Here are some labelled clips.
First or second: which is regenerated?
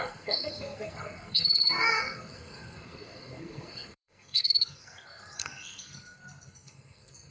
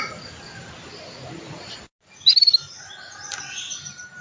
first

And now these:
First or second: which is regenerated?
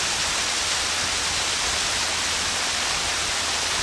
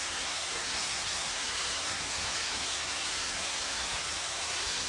second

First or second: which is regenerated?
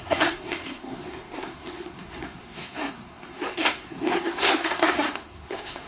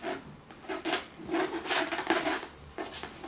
first